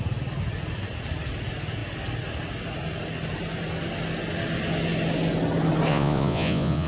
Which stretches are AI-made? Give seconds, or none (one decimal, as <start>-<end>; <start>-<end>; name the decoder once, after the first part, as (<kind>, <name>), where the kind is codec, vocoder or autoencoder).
5.9-6.9 (vocoder, Vocos)

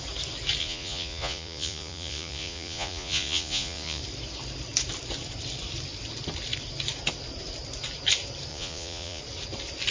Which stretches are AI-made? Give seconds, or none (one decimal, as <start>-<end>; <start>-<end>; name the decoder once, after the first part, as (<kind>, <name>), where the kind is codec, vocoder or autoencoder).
0.6-4.0 (vocoder, Vocos); 8.5-9.2

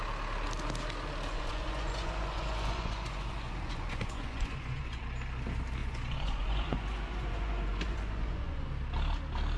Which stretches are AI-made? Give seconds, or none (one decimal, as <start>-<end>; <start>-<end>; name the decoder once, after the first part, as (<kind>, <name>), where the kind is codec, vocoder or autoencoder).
1.3-5.0 (vocoder, Vocos); 5.8-8.7